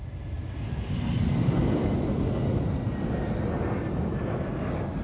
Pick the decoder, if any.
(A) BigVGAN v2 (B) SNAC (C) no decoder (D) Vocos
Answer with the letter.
C